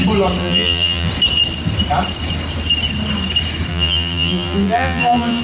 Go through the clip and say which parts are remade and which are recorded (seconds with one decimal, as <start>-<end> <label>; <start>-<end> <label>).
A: 0.0-0.4 recorded; 0.4-1.1 remade; 1.1-3.7 recorded; 3.7-5.4 remade